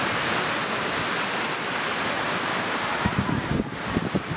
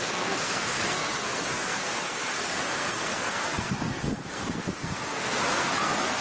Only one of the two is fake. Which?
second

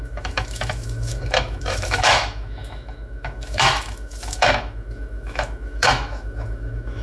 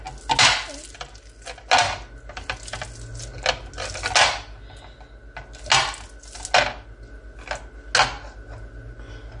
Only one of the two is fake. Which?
first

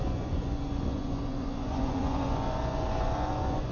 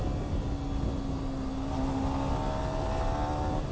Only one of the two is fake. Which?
first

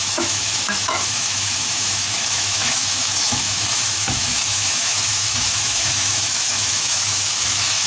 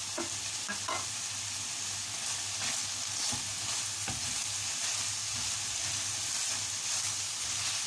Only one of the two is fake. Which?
first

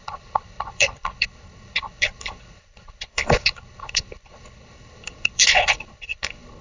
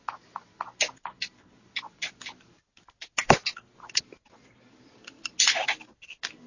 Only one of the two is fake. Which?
first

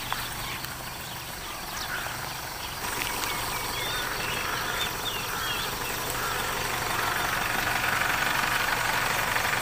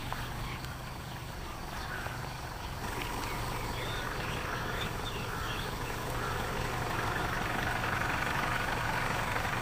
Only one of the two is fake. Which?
second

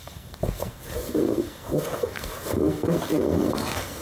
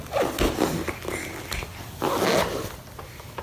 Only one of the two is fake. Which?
first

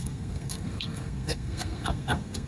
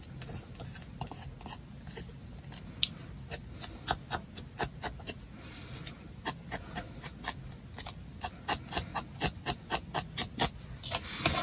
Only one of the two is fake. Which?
first